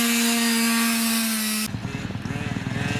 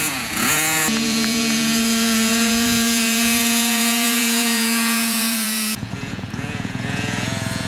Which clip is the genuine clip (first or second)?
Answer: first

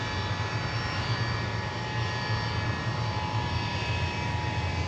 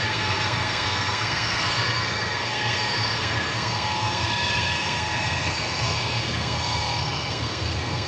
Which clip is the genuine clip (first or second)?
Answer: first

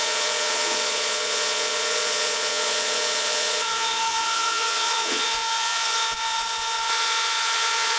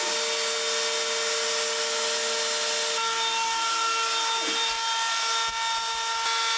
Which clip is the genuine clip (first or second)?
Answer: second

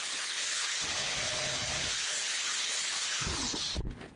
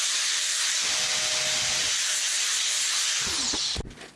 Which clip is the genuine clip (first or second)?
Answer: second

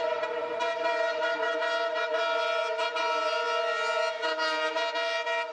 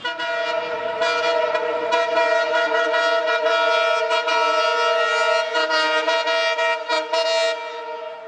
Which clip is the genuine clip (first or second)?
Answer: second